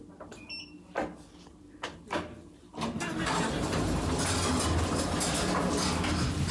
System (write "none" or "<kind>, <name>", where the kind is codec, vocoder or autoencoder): none